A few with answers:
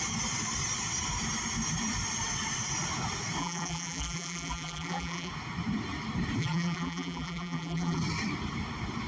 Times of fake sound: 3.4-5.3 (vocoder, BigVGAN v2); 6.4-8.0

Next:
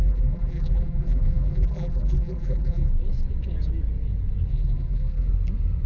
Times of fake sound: 0.0-2.9 (vocoder, BigVGAN v2); 4.5-5.3